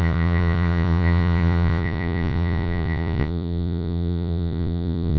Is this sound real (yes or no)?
no